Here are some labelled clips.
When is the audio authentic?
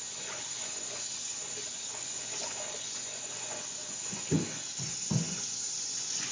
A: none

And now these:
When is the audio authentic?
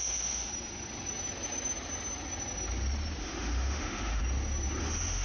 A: 0.5-3.2; 4.2-4.8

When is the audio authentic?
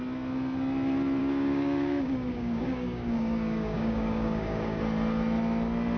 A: 0.0-1.2; 4.8-6.0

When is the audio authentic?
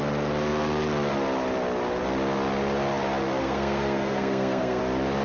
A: 0.0-3.4; 4.8-5.2